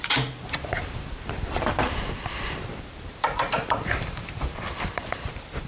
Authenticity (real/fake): fake